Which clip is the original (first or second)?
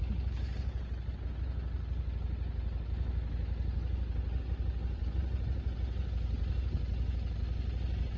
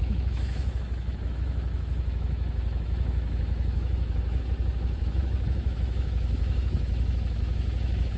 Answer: first